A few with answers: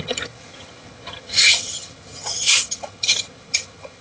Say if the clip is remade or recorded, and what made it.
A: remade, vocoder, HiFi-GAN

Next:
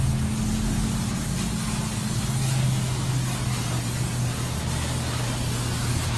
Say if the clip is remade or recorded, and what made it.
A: recorded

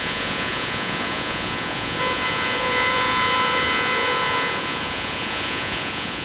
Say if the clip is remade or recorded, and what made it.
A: remade, vocoder, Vocos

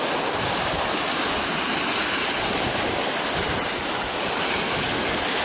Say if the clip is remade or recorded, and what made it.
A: recorded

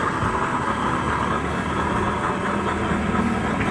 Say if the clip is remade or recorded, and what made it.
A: recorded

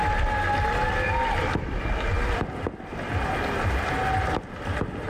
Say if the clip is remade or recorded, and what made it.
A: recorded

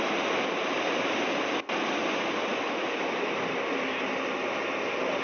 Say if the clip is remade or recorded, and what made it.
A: remade, vocoder, BigVGAN v2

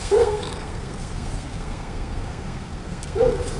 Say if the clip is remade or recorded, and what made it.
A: remade, codec, SNAC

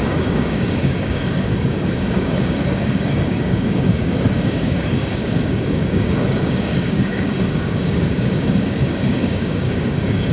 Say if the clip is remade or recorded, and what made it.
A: remade, codec, DAC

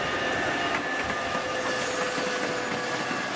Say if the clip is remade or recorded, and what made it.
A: recorded